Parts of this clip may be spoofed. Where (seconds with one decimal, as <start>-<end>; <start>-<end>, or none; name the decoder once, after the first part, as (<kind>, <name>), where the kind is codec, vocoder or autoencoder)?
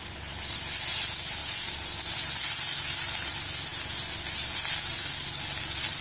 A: none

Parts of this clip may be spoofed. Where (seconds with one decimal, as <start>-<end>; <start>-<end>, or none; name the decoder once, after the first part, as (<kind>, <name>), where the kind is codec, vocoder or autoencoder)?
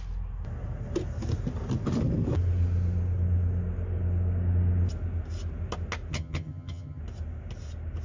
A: 6.1-7.0 (vocoder, HiFi-GAN)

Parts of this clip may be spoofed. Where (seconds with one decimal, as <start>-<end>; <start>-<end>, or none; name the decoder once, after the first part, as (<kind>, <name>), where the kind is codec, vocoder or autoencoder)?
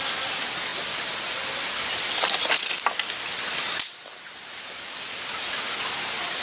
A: none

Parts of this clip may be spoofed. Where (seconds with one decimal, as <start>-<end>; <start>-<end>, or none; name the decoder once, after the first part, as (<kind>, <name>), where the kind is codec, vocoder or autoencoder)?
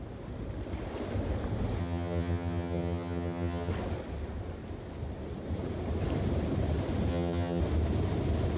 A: 1.8-3.7 (vocoder, HiFi-GAN); 7.1-7.6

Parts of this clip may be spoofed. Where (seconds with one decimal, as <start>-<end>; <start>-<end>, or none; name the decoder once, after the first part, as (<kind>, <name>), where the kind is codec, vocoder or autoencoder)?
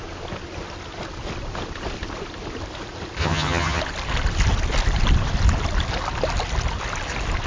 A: 3.2-3.8 (vocoder, HiFi-GAN)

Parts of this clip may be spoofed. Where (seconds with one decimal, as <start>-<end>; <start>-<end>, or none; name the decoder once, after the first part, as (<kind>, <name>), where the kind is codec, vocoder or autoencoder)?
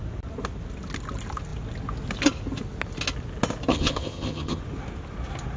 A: 3.7-4.6 (vocoder, HiFi-GAN)